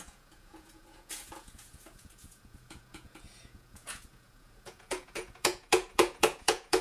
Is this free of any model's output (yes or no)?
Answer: no